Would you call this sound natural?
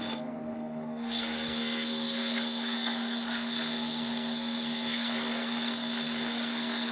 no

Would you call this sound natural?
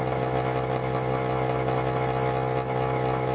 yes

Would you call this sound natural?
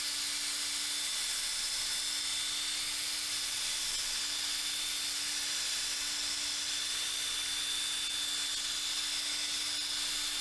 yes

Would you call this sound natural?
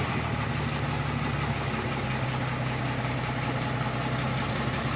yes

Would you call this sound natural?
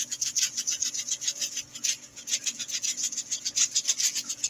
no